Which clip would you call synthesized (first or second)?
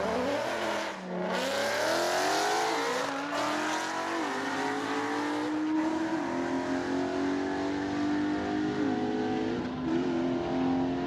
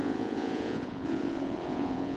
second